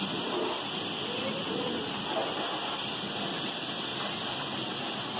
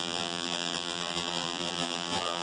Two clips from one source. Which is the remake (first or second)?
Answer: second